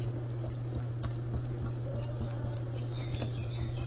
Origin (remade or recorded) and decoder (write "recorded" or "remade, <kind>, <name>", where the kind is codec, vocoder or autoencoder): recorded